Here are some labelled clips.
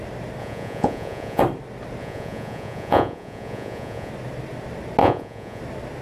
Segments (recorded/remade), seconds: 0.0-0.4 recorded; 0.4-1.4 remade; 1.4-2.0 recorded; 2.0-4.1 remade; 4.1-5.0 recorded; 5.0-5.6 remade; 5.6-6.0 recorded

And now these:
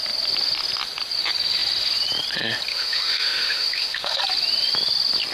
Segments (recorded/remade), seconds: 0.0-2.7 recorded; 2.7-4.2 remade; 4.2-5.3 recorded

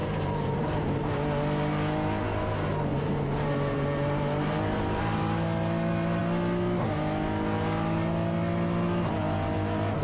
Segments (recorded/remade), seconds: 0.0-1.1 remade; 1.1-2.9 recorded; 2.9-5.2 remade; 5.2-10.0 recorded

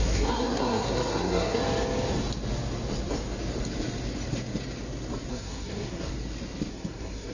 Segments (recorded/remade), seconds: 0.0-1.6 remade; 1.6-5.3 recorded; 5.3-6.1 remade; 6.1-6.7 recorded; 6.7-7.3 remade

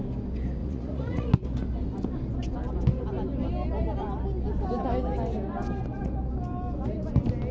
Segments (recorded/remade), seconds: 0.0-0.6 recorded; 0.6-1.3 remade; 1.3-7.5 recorded

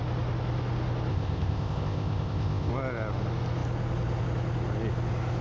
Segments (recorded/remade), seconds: 0.0-1.1 recorded; 1.1-2.7 remade; 2.7-5.4 recorded